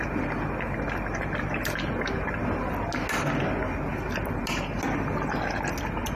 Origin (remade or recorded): recorded